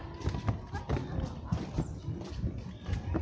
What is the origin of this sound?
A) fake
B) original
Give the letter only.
B